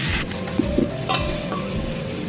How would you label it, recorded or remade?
remade